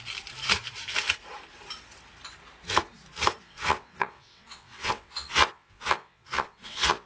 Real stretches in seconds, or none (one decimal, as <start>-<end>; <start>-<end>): 0.0-3.4